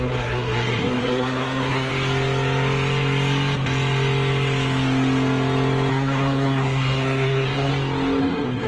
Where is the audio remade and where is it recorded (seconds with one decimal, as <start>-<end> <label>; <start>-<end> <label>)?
0.0-1.9 remade; 1.9-5.9 recorded; 5.9-7.7 remade; 7.7-8.2 recorded; 8.2-8.7 remade